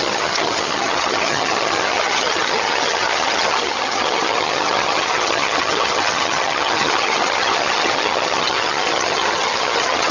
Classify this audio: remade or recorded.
remade